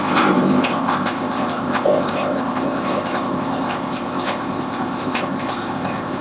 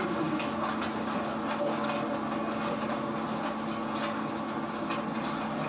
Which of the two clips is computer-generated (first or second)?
first